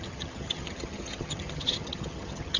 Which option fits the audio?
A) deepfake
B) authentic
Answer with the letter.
A